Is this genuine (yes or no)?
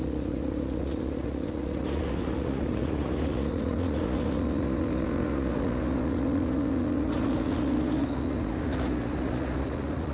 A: no